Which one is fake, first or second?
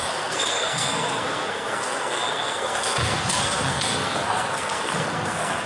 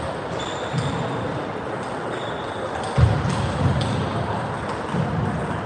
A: first